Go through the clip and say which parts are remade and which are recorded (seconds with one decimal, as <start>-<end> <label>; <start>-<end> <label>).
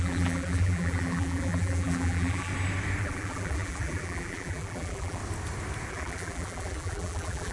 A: 0.0-2.5 remade; 2.5-3.0 recorded; 3.0-5.2 remade; 5.2-5.9 recorded; 5.9-7.5 remade